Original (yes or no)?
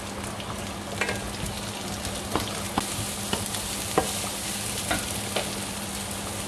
yes